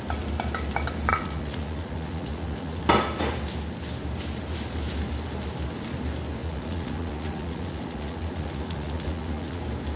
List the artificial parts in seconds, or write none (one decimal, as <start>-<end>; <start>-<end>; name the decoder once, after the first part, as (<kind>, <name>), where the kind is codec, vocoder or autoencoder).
1.1-2.8 (vocoder, Vocos); 6.4-9.6